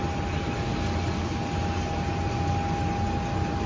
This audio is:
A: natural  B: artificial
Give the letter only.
A